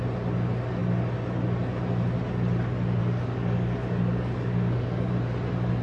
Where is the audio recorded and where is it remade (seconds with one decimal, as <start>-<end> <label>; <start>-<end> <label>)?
0.0-3.0 recorded; 3.0-5.1 remade; 5.1-5.8 recorded